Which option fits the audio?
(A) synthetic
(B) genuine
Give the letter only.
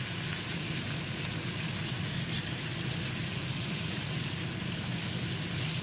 B